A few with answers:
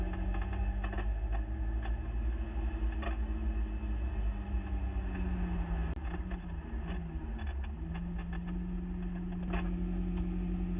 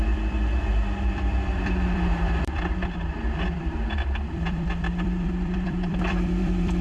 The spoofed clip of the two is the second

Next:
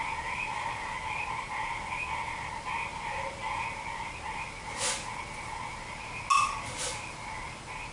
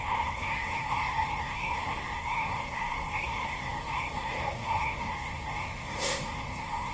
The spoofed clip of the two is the second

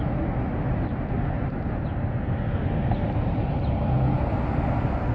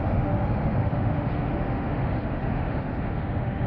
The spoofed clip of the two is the second